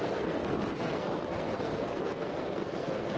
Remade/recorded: remade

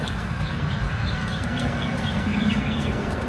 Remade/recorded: remade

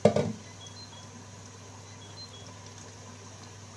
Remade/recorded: recorded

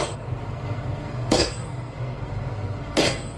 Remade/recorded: remade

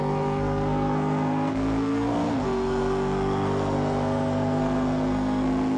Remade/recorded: remade